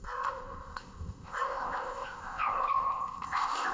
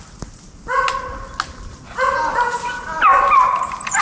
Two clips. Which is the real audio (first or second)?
second